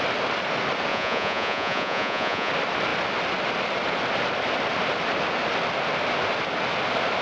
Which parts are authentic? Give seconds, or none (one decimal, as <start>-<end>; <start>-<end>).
0.0-0.9; 2.5-7.2